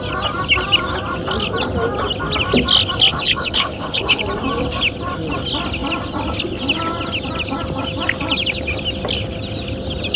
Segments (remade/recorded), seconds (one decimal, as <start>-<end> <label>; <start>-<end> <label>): 0.0-3.1 recorded; 3.1-4.2 remade; 4.2-10.2 recorded